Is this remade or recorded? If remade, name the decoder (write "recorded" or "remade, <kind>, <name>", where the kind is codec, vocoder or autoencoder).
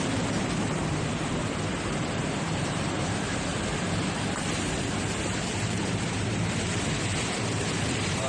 remade, vocoder, BigVGAN v2